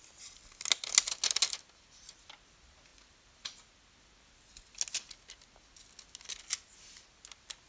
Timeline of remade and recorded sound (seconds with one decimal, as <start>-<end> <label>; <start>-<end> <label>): 0.0-7.7 recorded